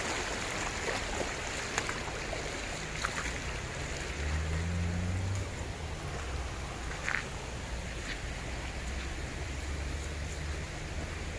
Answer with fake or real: real